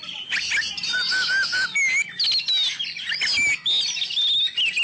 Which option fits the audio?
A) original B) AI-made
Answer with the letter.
A